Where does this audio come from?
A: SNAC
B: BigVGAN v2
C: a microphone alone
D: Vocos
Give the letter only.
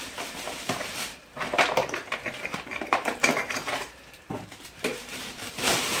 B